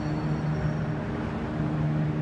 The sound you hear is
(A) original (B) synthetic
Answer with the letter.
A